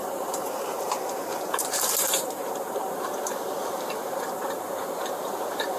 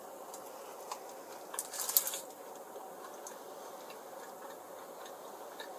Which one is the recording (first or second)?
second